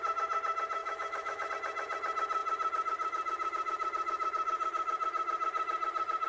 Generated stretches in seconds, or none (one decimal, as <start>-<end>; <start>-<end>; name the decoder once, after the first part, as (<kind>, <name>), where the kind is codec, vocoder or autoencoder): 0.8-1.5 (autoencoder, DAC-VAE)